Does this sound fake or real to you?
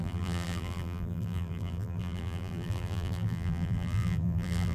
fake